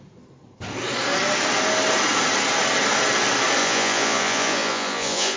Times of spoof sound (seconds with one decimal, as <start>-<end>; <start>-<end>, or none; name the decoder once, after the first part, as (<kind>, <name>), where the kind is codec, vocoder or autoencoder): 3.6-5.4 (vocoder, Vocos)